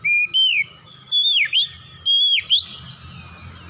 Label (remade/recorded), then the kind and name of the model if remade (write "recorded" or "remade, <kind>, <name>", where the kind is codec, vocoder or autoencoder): recorded